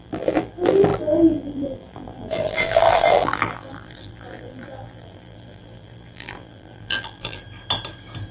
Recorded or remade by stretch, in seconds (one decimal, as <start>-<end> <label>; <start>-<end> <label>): 0.0-7.4 remade; 7.4-8.3 recorded